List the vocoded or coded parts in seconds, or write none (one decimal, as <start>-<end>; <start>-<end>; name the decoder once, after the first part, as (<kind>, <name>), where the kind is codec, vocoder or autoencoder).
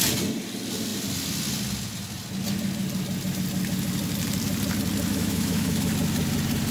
5.1-5.9 (autoencoder, DAC-VAE)